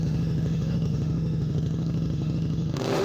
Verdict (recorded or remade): remade